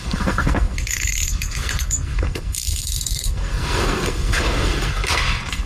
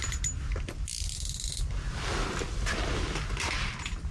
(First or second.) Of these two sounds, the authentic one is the second